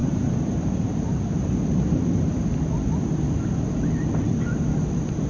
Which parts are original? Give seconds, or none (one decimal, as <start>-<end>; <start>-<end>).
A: 2.2-5.3